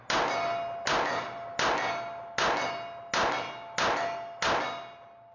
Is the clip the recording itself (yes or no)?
yes